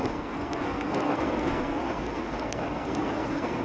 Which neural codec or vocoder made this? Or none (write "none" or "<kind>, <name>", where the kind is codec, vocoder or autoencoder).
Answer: codec, SNAC